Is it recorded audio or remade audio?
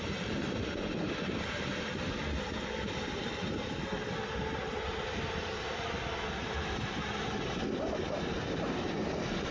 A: remade